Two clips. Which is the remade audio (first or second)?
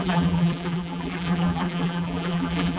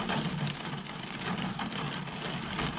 first